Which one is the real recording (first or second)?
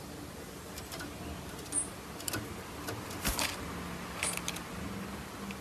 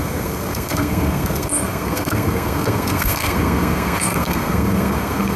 first